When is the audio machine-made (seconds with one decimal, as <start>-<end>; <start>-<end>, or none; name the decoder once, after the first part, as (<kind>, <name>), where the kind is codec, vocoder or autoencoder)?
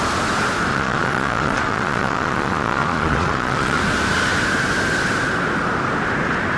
0.7-3.8 (vocoder, Vocos)